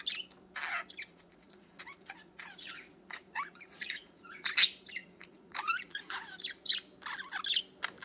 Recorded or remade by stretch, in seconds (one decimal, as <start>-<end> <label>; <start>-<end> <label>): 0.0-1.1 recorded; 1.1-4.5 remade; 4.5-5.0 recorded; 5.0-6.4 remade; 6.4-8.0 recorded